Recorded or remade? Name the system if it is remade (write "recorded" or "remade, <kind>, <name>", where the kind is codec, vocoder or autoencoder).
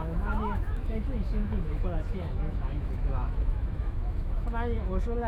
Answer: remade, autoencoder, DAC-VAE